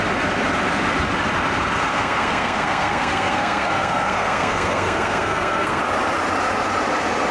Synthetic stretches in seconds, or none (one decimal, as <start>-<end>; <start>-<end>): 1.9-5.8